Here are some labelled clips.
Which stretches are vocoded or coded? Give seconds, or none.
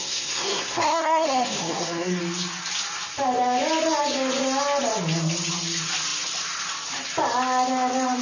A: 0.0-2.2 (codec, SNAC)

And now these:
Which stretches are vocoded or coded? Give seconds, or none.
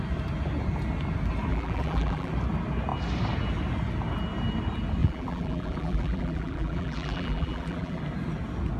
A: 1.5-2.3 (vocoder, BigVGAN v2); 5.0-8.0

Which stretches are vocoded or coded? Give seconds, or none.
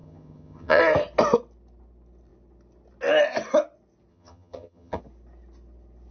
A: 0.0-0.8 (vocoder, HiFi-GAN); 4.1-5.0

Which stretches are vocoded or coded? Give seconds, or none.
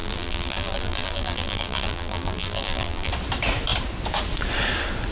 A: 0.0-3.1 (vocoder, BigVGAN v2)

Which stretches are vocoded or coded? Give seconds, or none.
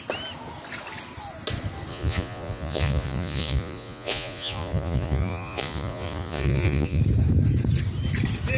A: 1.9-7.0 (vocoder, Vocos)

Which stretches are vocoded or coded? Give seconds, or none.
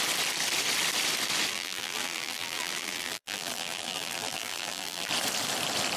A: 1.5-5.1 (vocoder, BigVGAN v2)